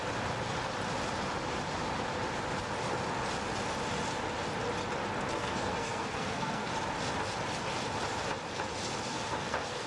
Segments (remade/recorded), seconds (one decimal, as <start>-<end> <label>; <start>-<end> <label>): 0.0-5.3 recorded; 5.3-6.7 remade; 6.7-9.1 recorded; 9.1-9.9 remade